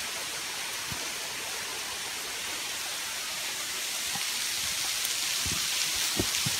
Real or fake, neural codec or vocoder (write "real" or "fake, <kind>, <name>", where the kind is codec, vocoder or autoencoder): real